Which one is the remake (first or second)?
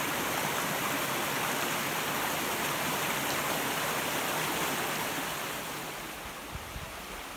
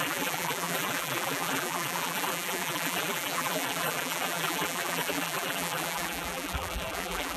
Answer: second